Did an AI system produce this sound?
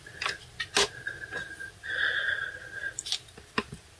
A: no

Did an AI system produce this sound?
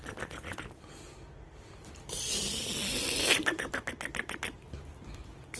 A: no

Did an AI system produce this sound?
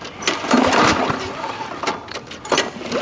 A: no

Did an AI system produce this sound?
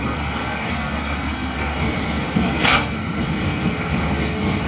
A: yes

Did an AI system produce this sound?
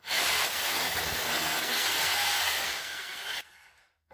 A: yes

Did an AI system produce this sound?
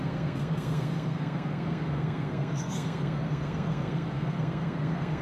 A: yes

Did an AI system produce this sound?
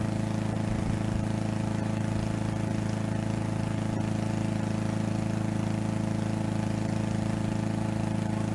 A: no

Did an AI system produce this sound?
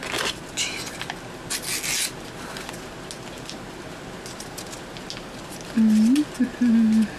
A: no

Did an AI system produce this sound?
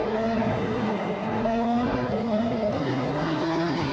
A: yes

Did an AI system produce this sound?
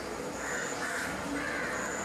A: no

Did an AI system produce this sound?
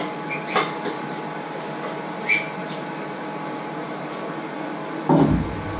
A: no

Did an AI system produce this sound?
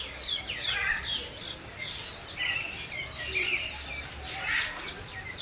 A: no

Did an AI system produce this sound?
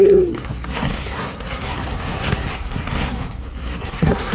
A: yes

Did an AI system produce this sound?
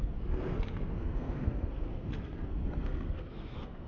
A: yes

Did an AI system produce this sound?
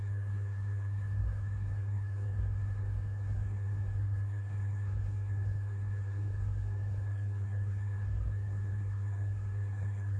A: yes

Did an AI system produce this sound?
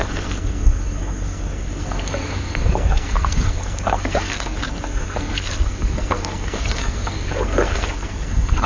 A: yes